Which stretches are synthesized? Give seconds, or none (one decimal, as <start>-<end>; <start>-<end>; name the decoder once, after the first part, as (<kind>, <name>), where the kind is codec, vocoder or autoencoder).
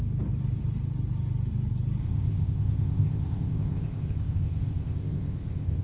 2.0-5.8 (codec, ZipCodec)